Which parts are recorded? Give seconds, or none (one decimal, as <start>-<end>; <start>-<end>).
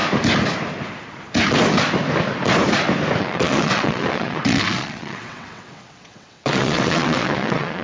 0.0-3.2